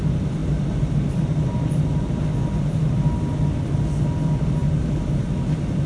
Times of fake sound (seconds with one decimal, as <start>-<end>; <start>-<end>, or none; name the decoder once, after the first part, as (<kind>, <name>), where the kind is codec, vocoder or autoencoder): none